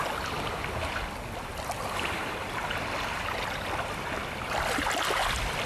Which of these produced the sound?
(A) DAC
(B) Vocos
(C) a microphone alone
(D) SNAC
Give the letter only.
C